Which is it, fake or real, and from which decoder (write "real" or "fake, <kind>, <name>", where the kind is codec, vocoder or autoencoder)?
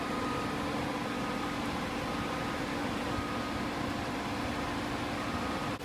real